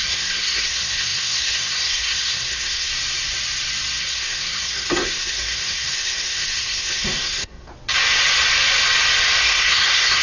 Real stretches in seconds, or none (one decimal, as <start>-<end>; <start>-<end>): 2.9-4.0; 7.7-9.4